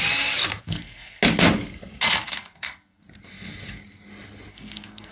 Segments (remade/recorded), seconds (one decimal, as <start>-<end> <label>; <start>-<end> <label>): 0.0-0.6 recorded; 0.6-1.2 remade; 1.2-2.2 recorded; 2.2-3.0 remade; 3.0-4.5 recorded; 4.5-5.1 remade